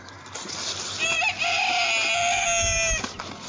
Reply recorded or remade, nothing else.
recorded